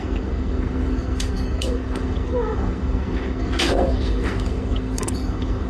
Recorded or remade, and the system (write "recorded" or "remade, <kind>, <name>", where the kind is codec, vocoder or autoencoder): remade, codec, SNAC